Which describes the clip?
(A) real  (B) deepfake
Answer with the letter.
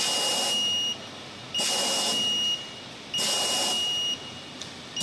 A